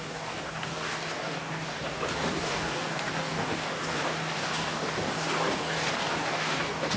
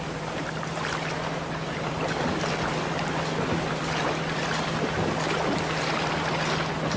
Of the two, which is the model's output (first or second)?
first